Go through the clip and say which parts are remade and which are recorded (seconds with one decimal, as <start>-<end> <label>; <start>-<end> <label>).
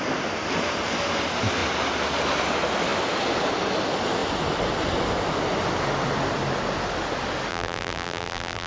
0.0-7.5 recorded; 7.5-8.7 remade